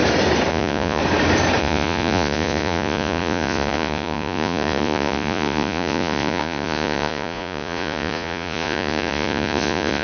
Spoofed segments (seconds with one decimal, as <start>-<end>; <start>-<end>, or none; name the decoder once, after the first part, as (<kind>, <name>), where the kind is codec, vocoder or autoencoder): 0.5-1.0 (vocoder, Vocos); 1.6-10.0